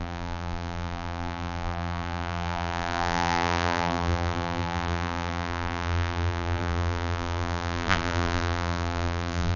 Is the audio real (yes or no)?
no